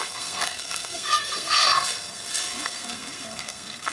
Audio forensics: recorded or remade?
remade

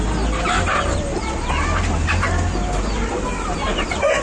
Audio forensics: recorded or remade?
recorded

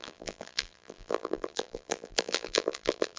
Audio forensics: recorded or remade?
remade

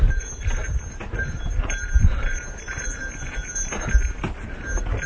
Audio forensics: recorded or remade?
recorded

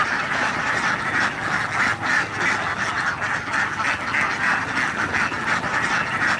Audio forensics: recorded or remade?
recorded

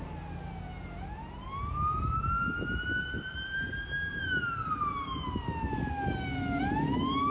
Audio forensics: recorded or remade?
recorded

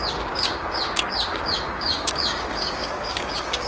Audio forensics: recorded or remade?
remade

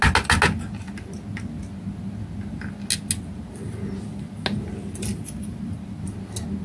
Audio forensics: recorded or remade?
recorded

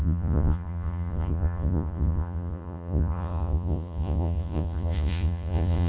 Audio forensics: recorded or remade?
remade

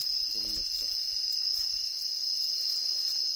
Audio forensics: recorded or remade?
recorded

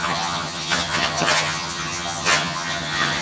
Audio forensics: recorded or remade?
remade